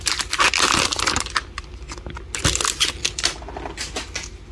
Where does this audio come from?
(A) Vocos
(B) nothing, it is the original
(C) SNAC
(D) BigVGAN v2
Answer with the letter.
B